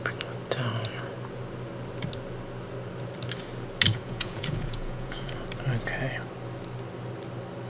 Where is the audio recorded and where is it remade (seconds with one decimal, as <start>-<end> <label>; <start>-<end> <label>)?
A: 0.0-3.9 recorded; 3.9-5.3 remade; 5.3-7.7 recorded